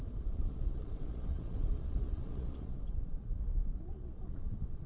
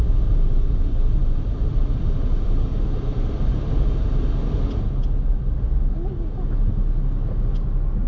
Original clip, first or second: second